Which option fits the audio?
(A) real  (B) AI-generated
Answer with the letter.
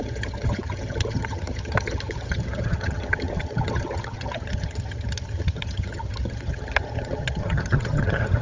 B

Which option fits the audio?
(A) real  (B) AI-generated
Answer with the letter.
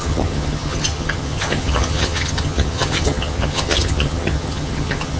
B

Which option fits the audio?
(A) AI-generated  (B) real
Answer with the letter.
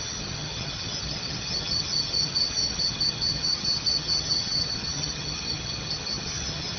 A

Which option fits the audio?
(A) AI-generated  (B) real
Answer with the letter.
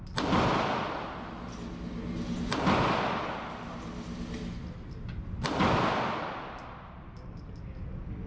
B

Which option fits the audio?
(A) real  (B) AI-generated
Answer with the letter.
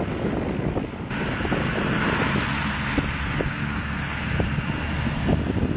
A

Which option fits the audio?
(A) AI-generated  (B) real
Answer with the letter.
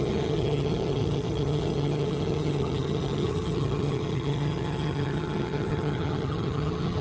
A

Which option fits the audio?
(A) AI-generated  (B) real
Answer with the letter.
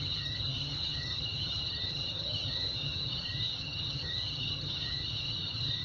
A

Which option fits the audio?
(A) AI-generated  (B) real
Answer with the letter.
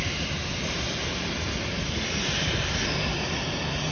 B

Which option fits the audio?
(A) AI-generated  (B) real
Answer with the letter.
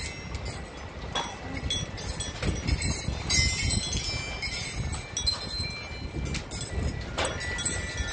B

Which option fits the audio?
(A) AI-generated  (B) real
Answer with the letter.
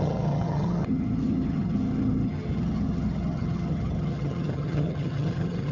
A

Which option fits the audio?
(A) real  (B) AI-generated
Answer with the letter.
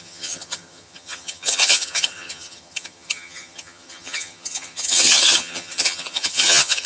B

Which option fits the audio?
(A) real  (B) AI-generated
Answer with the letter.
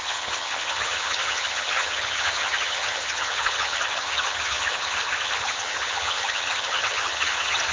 B